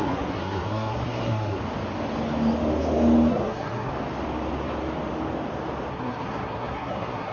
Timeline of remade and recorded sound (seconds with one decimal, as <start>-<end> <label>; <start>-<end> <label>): 0.0-1.6 remade; 1.6-3.3 recorded; 3.3-3.9 remade; 3.9-5.9 recorded; 5.9-7.3 remade